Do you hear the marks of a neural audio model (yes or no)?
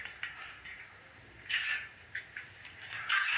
no